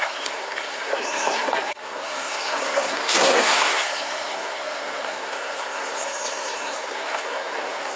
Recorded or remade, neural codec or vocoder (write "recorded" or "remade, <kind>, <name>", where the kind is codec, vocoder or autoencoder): remade, codec, SNAC